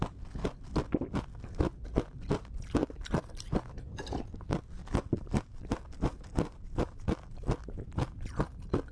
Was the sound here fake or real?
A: real